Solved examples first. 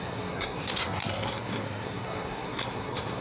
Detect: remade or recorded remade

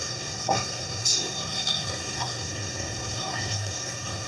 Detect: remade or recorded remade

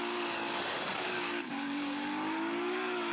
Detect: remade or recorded remade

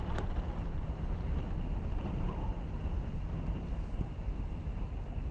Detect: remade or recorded recorded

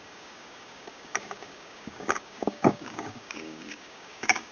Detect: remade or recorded remade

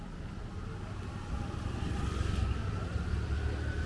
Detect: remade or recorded recorded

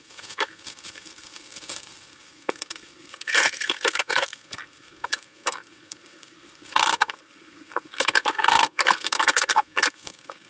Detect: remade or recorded remade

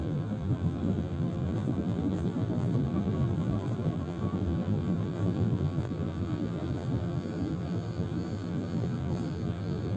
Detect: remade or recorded remade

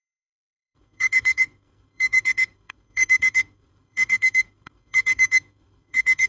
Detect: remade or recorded remade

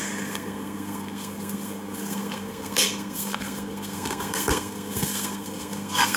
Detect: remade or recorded remade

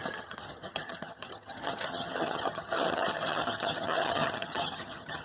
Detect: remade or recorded remade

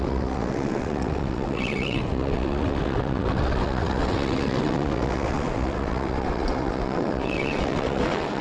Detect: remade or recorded remade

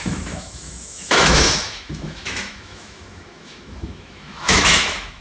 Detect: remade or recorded remade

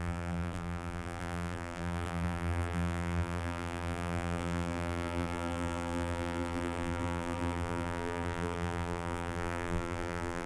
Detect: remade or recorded remade